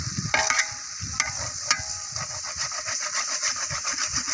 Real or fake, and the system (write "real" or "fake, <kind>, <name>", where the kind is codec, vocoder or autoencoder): real